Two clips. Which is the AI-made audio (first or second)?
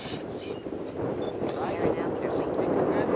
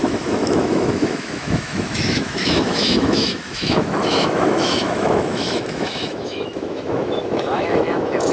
second